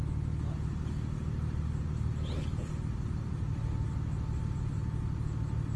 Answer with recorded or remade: recorded